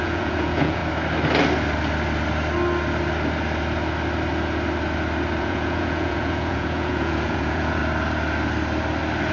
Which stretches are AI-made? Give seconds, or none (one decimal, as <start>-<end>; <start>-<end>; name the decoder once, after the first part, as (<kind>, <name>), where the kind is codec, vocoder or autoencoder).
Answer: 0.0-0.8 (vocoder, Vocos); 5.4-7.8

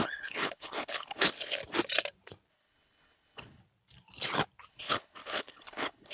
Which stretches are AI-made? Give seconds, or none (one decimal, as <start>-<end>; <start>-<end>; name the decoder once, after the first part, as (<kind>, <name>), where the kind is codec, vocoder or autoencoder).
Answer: 0.0-1.6 (codec, HILCodec); 2.5-3.6; 4.7-6.1

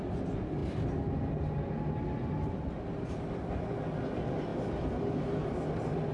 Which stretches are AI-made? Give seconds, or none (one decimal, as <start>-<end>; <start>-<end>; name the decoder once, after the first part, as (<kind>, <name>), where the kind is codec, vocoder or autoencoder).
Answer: none

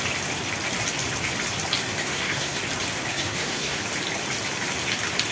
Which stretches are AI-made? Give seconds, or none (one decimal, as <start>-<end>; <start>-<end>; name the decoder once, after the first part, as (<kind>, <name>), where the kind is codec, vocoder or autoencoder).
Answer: 2.0-2.6 (codec, SNAC); 3.1-3.8

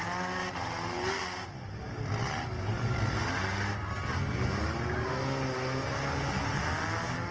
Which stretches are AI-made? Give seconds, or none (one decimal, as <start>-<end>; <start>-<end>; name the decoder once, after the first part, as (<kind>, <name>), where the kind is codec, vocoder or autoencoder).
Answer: none